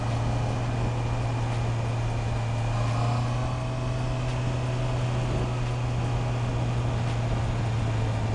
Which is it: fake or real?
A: real